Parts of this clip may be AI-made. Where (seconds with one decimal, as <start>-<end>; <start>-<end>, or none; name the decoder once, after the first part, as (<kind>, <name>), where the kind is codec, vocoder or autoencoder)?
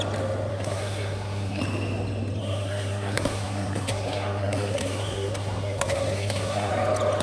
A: 0.5-1.6 (codec, SNAC); 2.4-6.7